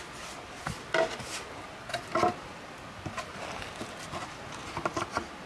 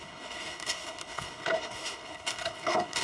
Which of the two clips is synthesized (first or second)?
second